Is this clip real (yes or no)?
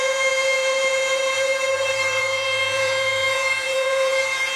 no